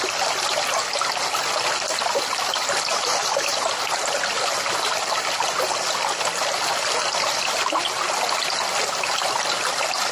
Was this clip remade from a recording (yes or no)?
no